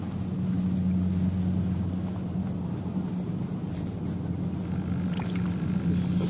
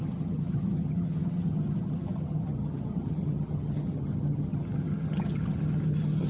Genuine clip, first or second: first